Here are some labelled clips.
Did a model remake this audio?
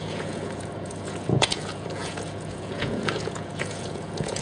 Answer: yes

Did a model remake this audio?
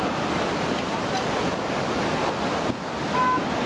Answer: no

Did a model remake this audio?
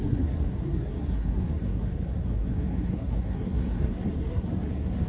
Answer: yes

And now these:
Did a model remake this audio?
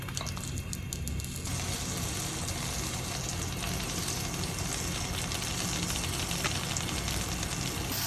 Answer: no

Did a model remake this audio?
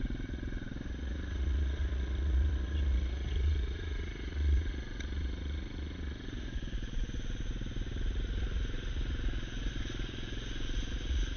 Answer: yes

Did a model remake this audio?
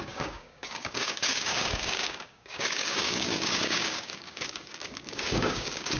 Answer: yes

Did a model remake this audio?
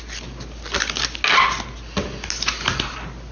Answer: no